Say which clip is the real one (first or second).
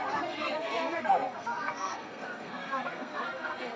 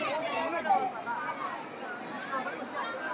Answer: second